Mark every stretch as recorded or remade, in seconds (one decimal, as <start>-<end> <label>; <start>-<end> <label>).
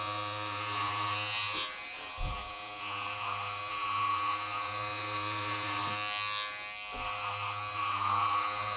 0.0-5.8 remade; 5.8-7.7 recorded; 7.7-8.8 remade